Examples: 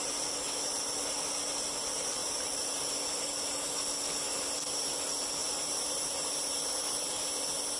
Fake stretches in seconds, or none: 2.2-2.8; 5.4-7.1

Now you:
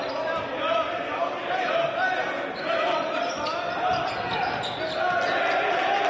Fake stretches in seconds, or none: none